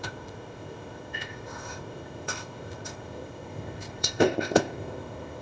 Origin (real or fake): fake